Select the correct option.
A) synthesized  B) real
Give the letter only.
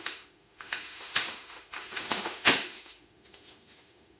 A